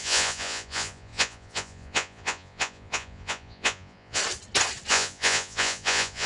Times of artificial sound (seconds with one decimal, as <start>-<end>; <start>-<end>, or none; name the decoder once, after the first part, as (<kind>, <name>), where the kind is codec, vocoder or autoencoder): 0.0-4.2 (vocoder, Vocos); 4.9-6.3

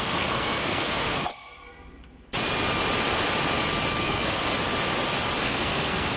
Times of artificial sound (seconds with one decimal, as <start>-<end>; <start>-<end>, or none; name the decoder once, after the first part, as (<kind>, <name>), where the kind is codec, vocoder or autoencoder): 0.0-1.3 (codec, SNAC); 4.0-4.4; 5.4-6.2

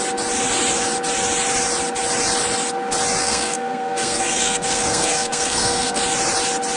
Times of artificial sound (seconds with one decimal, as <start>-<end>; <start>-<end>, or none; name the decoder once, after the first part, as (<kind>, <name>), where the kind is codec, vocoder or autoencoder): 3.2-6.0 (codec, SNAC)

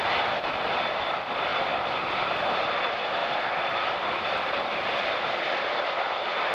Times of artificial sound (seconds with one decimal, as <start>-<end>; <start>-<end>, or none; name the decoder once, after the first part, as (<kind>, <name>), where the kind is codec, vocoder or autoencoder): 1.5-2.3 (vocoder, BigVGAN v2); 3.2-5.9

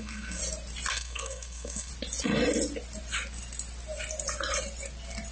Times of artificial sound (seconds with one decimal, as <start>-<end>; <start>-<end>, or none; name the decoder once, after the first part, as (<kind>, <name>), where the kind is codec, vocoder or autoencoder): 0.0-0.4 (codec, SNAC); 0.9-1.9

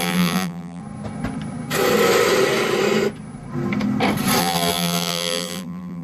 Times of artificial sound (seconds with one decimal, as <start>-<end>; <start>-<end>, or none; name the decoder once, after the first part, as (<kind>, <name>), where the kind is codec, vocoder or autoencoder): 0.0-0.8 (vocoder, BigVGAN v2); 4.4-6.0

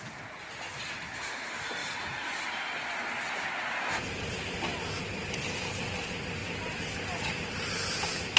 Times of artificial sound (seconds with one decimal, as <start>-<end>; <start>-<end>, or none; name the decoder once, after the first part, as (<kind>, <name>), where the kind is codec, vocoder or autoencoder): none

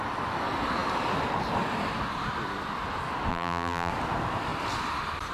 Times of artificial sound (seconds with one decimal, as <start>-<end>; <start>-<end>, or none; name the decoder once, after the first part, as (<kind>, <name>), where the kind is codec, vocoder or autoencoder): 3.3-3.9 (vocoder, BigVGAN v2)